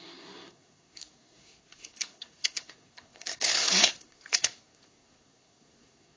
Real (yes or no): no